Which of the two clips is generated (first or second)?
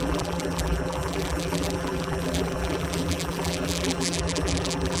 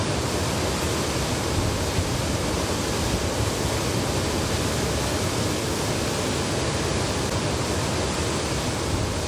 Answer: first